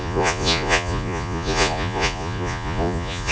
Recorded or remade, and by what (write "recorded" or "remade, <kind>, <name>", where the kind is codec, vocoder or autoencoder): remade, vocoder, Vocos